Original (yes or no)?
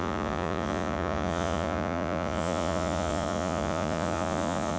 no